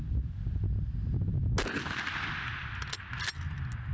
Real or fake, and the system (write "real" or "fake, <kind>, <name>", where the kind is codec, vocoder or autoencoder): real